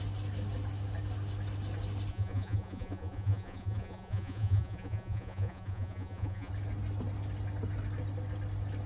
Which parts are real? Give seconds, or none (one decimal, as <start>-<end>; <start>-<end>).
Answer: 0.0-2.1; 6.5-8.9